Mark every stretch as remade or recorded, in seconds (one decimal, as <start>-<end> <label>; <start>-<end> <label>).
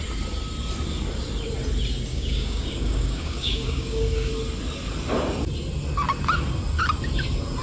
0.0-2.1 recorded; 2.1-4.3 remade; 4.3-7.6 recorded